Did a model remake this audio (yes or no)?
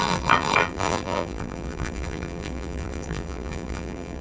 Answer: yes